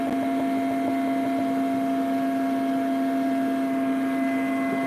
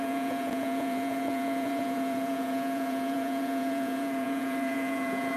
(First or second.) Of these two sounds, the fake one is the second